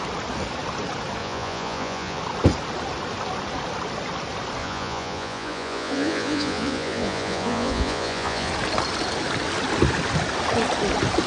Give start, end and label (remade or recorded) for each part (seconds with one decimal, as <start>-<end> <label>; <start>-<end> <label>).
0.0-1.2 recorded; 1.2-2.2 remade; 2.2-4.6 recorded; 4.6-8.5 remade; 8.5-11.3 recorded